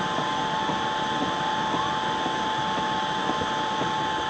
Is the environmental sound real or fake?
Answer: real